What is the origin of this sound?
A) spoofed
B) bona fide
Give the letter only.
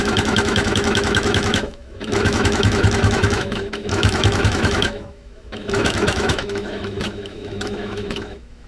A